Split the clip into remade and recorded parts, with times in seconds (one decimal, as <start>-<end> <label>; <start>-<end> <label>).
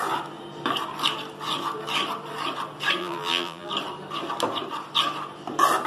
0.0-3.0 recorded; 3.0-3.7 remade; 3.7-5.9 recorded